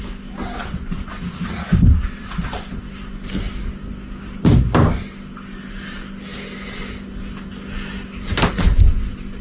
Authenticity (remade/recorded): recorded